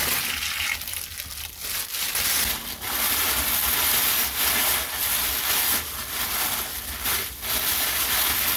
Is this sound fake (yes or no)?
no